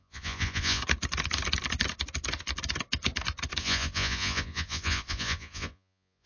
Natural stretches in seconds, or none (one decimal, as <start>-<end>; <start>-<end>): 0.8-3.6